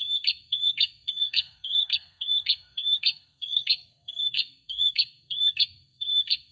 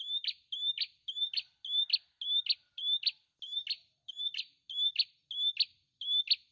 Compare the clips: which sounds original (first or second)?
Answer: second